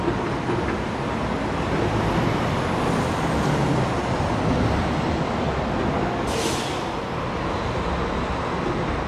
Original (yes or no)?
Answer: yes